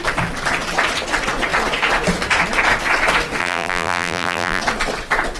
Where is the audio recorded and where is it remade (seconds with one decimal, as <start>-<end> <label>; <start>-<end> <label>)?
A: 0.0-3.4 recorded; 3.4-4.6 remade; 4.6-5.4 recorded